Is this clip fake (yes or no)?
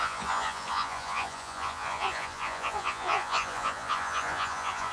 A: yes